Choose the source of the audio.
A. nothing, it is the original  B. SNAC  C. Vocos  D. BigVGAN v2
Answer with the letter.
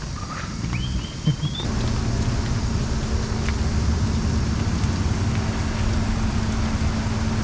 A